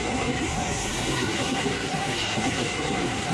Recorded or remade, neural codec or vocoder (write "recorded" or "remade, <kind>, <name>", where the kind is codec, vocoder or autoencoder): remade, codec, SNAC